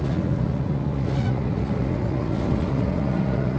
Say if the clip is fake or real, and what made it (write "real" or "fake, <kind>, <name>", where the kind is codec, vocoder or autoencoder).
fake, vocoder, Vocos